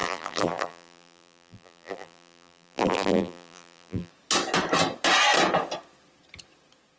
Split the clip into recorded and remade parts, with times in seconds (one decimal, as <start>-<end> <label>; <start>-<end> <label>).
0.0-4.1 remade; 4.1-7.0 recorded